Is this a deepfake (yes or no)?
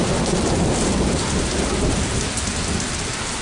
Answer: no